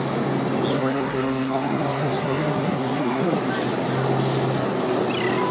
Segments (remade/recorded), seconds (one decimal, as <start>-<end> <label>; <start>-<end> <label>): 0.0-0.7 recorded; 0.7-3.4 remade; 3.4-5.5 recorded